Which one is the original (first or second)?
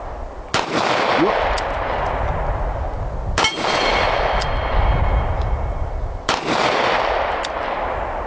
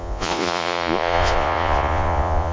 first